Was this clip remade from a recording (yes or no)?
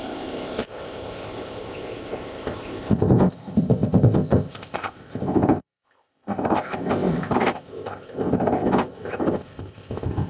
yes